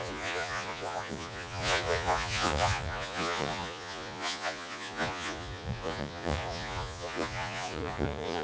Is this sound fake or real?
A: fake